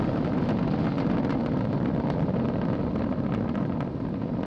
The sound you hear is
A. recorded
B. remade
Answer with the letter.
A